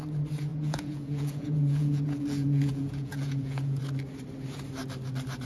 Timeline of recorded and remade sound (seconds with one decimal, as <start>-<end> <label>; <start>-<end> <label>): 0.0-0.5 recorded; 0.5-3.8 remade; 3.8-5.5 recorded